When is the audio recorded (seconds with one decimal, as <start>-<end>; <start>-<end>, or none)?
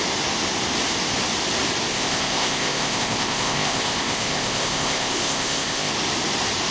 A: 0.0-1.9; 5.9-6.7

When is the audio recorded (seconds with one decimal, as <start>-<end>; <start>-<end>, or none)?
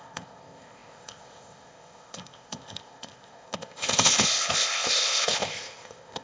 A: none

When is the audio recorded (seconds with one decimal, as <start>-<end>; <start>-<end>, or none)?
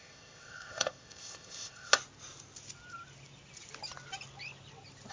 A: 1.9-5.1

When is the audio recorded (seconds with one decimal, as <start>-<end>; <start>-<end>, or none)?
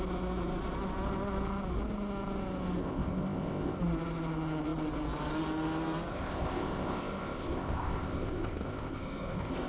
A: 0.0-2.8; 3.8-6.1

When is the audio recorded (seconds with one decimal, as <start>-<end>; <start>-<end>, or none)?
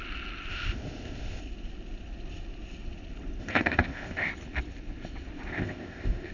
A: 0.0-0.5; 1.4-3.4; 4.3-5.5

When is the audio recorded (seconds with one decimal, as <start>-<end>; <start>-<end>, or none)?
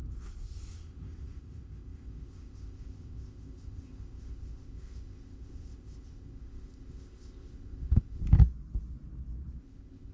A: 8.2-9.6